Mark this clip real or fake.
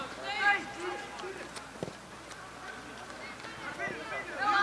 real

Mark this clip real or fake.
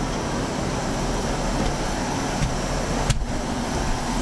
real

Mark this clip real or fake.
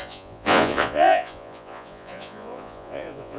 fake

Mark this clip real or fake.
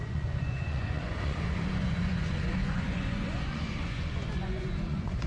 fake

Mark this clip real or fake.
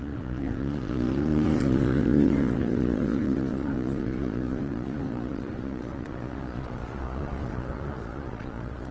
fake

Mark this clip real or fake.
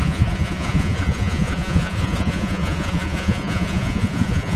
fake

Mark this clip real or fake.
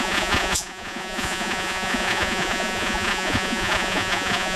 fake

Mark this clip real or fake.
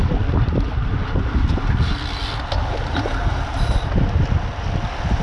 real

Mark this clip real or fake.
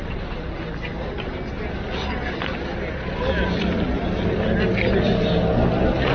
real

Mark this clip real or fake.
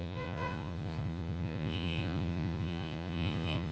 fake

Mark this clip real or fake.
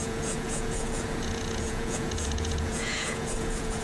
fake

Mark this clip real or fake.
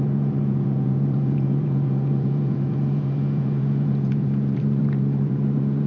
fake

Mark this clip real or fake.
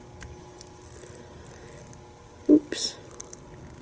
real